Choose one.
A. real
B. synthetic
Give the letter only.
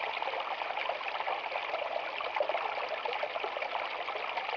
A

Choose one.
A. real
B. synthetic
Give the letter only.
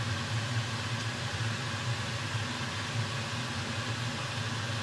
A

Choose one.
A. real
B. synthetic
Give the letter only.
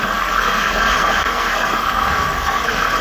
B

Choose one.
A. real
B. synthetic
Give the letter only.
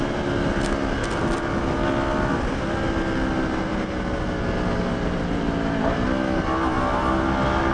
A